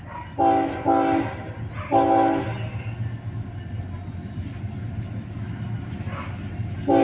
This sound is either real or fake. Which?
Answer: real